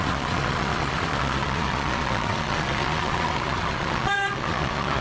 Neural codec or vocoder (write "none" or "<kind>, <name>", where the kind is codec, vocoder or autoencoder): vocoder, Vocos